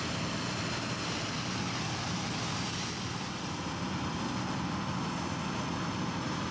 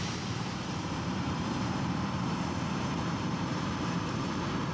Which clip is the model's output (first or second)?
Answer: second